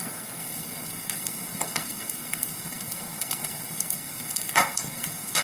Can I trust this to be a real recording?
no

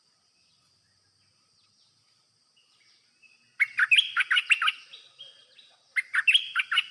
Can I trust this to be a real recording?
yes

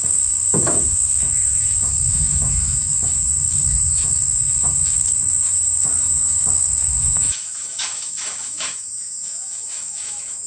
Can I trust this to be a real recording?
no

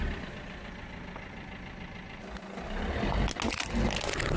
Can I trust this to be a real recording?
yes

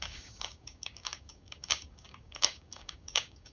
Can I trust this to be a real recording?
no